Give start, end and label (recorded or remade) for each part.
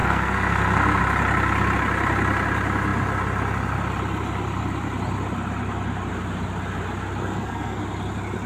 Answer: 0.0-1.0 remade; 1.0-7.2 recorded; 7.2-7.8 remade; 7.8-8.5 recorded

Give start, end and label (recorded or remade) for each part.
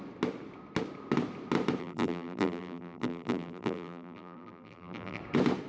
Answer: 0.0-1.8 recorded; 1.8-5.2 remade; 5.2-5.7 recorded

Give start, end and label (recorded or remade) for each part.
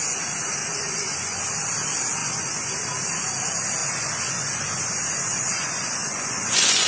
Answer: 0.0-0.6 recorded; 0.6-1.4 remade; 1.4-2.2 recorded; 2.2-2.7 remade; 2.7-3.8 recorded; 3.8-6.9 remade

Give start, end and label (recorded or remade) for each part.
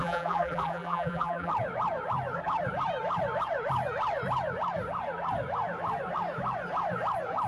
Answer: 0.0-1.5 remade; 1.5-7.5 recorded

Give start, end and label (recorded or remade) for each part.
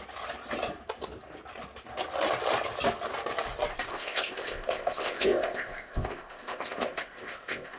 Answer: 0.0-3.9 recorded; 3.9-7.8 remade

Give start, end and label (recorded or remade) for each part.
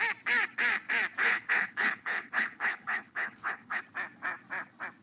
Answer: 0.0-1.2 recorded; 1.2-3.8 remade; 3.8-5.0 recorded